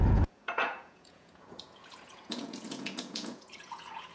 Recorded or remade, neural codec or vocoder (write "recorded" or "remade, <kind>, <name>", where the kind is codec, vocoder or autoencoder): remade, vocoder, Vocos